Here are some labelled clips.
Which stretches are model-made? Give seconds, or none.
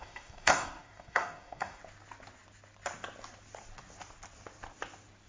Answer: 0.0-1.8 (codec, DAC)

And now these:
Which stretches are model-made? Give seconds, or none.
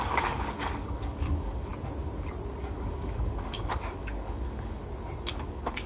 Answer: 0.0-1.7 (codec, DAC); 2.5-4.8; 5.3-5.9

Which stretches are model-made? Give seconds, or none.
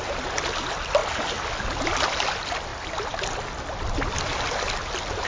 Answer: none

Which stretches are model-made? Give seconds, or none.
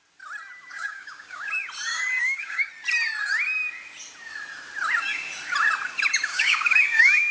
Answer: 0.7-1.5 (codec, DAC); 1.9-2.7; 6.3-7.3